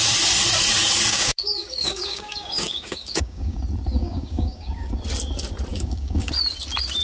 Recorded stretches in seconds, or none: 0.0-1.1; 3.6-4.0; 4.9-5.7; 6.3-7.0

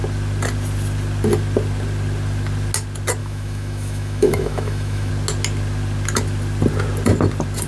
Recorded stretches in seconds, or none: 0.0-3.2; 5.1-7.7

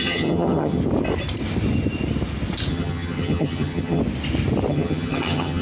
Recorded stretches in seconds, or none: 0.8-2.7; 4.0-4.7

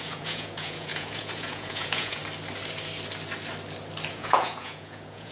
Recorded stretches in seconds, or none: 2.2-4.1

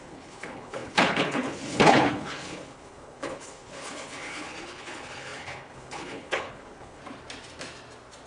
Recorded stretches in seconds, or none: 7.0-8.3

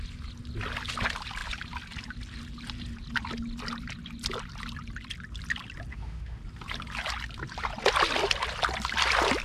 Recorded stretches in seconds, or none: 0.0-5.9; 6.4-9.4

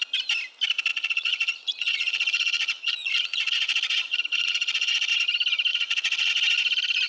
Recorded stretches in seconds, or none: 0.0-0.9; 5.1-5.7; 6.3-7.1

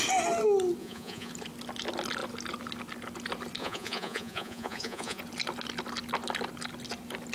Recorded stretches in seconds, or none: 0.0-0.8; 1.3-3.6; 5.2-7.3